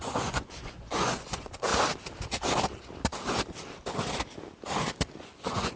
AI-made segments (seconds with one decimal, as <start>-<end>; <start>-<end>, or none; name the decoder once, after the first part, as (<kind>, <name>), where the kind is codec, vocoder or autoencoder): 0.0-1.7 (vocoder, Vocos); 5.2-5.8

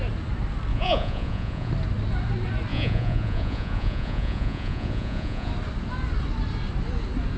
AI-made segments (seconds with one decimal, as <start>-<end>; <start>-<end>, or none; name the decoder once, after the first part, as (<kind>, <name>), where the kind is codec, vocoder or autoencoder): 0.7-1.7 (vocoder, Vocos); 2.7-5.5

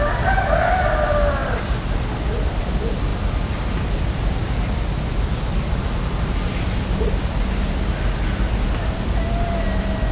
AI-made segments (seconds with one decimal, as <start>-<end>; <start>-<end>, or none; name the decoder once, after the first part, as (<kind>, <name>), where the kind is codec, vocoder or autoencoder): none

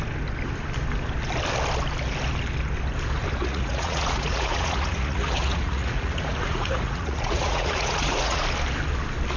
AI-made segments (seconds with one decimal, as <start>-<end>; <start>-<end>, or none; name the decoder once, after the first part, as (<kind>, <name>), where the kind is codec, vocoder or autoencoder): 3.4-8.4 (vocoder, Vocos)

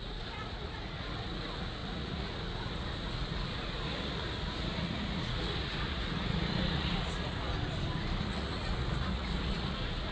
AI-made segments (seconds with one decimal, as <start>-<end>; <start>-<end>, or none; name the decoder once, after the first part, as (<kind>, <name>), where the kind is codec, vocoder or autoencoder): 0.0-7.5 (vocoder, Vocos); 8.2-10.1